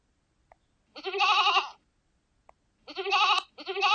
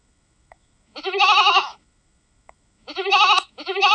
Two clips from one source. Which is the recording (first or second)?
first